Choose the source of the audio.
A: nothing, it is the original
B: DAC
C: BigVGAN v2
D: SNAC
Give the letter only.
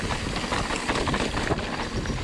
A